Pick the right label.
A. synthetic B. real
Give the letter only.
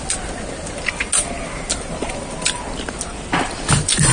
B